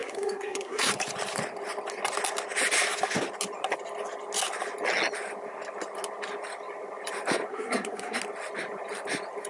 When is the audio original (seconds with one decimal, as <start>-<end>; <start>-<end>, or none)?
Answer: 0.9-7.5; 8.2-9.5